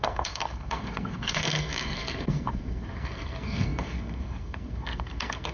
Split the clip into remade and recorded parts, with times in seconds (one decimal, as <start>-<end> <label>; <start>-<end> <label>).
0.0-5.5 remade